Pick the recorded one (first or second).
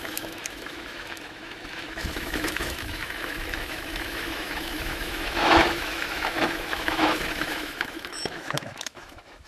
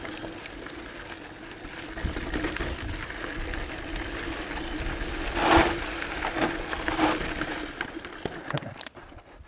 second